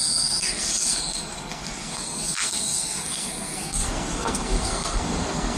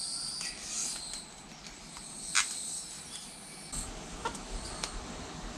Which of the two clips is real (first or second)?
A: second